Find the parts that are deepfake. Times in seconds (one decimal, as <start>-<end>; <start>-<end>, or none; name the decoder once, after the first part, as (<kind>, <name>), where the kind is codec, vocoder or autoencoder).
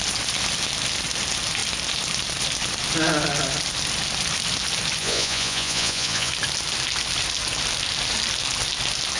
5.0-6.3 (vocoder, Vocos)